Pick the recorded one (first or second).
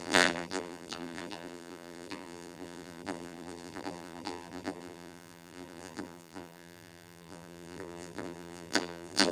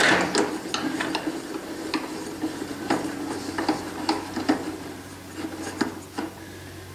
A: second